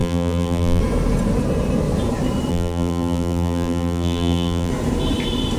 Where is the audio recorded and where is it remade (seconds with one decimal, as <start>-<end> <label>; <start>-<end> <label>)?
0.0-0.8 remade; 0.8-2.5 recorded; 2.5-4.7 remade; 4.7-5.6 recorded